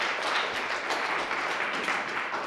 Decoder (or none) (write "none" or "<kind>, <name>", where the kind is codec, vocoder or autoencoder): vocoder, BigVGAN v2